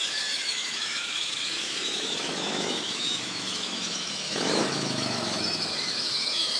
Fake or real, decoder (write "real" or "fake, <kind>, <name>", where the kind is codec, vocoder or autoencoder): fake, autoencoder, DAC-VAE